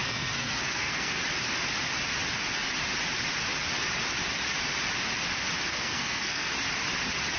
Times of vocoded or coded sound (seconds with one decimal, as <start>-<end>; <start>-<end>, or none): 0.0-1.2; 5.7-6.5